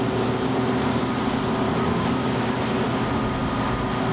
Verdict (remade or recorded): recorded